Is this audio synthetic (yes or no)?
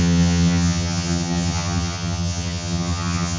yes